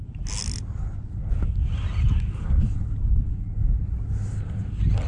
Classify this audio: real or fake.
real